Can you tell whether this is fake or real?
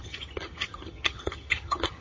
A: fake